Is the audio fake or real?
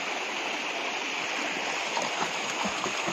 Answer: real